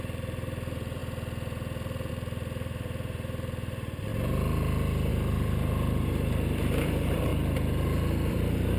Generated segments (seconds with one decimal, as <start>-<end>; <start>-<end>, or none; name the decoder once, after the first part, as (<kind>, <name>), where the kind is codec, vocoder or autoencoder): 0.0-1.0 (vocoder, BigVGAN v2); 2.1-4.1; 5.1-7.3; 8.3-8.8